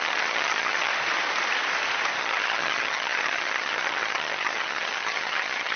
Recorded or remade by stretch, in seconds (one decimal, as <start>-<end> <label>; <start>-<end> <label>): 0.0-0.9 remade; 0.9-2.2 recorded; 2.2-5.8 remade